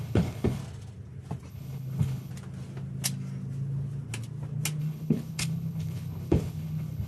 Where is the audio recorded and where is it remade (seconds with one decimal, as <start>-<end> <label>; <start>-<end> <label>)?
0.0-0.6 remade; 0.6-1.5 recorded; 1.5-2.3 remade; 2.3-4.8 recorded; 4.8-7.1 remade